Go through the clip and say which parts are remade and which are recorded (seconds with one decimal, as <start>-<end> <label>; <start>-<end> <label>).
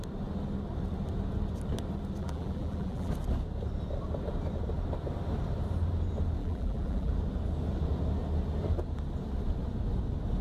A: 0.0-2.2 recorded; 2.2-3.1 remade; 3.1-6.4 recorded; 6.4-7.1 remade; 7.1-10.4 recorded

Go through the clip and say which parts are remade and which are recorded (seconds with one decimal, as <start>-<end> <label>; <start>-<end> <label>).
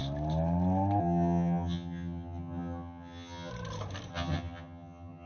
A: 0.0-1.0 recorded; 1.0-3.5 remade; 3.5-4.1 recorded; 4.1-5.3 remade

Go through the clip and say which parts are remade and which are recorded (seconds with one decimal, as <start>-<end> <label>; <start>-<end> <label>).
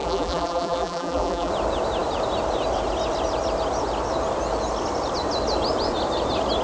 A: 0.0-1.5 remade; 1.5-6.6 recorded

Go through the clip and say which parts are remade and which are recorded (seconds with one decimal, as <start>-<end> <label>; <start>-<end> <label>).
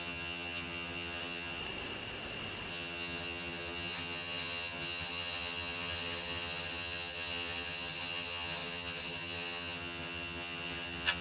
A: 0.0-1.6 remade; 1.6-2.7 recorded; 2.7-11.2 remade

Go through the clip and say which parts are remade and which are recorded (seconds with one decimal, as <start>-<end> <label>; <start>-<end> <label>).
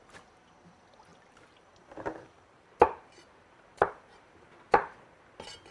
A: 0.0-1.1 recorded; 1.1-4.5 remade; 4.5-5.7 recorded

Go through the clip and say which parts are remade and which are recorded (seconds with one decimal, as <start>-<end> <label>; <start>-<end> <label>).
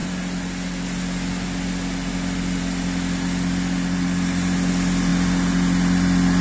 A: 0.0-6.4 recorded